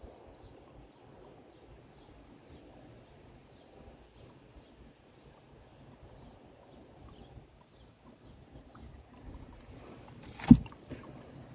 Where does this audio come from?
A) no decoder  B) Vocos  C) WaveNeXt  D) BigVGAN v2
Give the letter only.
A